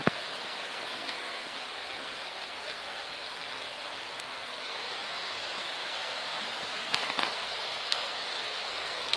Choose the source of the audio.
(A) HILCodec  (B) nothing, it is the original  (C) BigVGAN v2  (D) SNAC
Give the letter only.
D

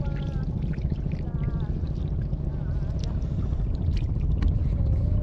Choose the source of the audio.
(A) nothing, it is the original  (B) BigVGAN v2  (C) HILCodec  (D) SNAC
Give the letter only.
A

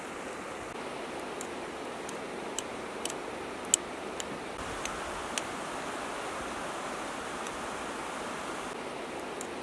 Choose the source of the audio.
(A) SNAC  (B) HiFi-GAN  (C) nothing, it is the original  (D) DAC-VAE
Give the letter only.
C